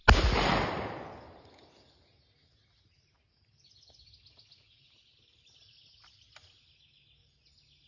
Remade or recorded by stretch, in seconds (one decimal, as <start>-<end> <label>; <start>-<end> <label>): 0.0-7.9 recorded